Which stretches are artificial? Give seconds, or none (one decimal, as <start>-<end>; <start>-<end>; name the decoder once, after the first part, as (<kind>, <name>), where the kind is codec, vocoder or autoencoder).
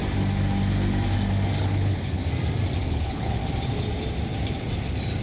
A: 1.6-2.2 (codec, HILCodec); 2.9-3.4